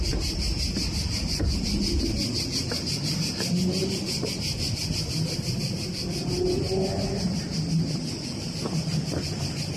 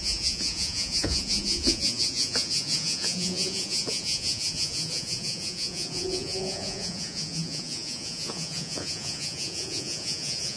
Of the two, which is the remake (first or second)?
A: second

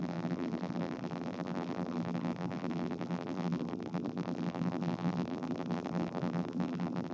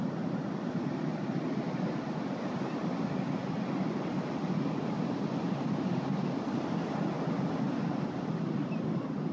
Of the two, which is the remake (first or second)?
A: first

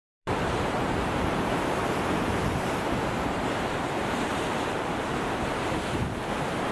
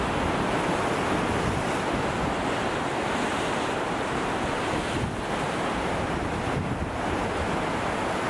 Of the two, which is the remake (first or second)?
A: first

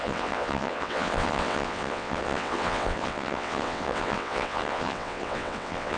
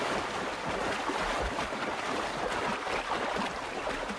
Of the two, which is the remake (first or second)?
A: first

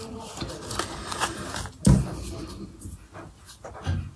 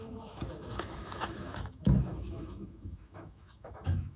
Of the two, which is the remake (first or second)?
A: second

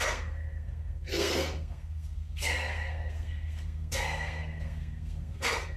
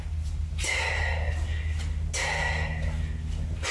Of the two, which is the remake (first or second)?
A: first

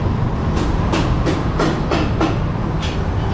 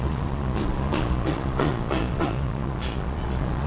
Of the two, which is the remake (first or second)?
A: second